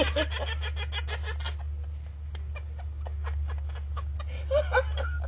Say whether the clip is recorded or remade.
recorded